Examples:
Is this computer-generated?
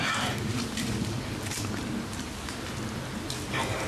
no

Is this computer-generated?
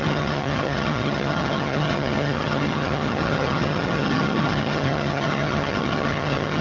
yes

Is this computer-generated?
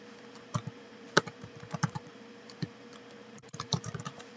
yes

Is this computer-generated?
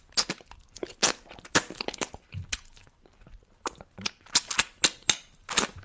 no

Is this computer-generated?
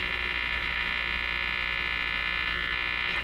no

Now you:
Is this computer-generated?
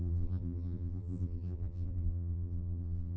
yes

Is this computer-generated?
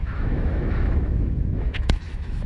yes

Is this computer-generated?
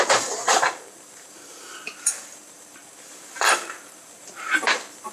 yes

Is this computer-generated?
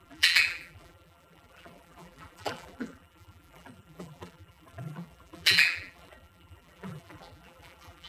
yes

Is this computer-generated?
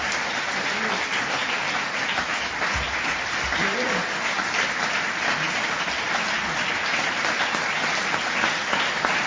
no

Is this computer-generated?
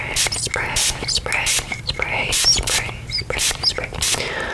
no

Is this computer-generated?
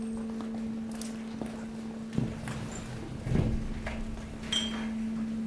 no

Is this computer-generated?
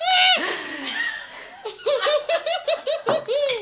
no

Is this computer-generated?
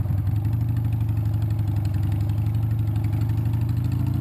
no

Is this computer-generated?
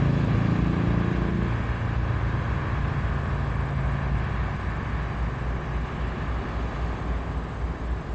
no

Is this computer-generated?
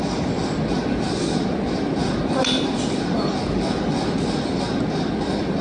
no